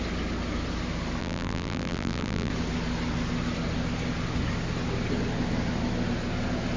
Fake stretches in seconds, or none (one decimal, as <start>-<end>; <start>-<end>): 1.2-2.5